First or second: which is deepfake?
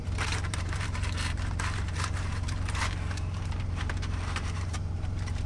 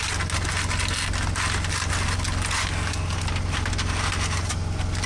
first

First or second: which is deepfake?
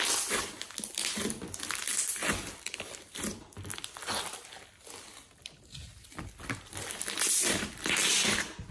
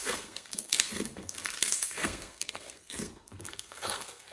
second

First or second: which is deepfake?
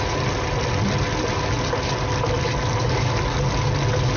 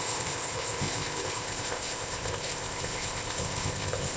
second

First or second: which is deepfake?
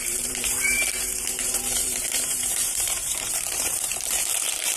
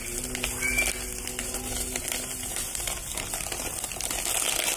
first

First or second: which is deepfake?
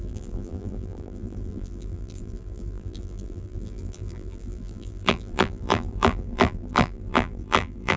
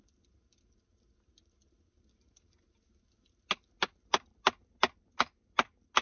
first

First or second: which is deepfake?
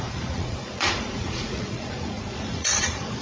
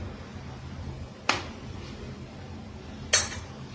first